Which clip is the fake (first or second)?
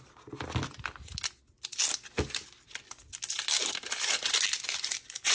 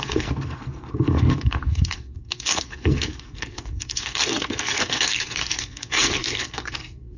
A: second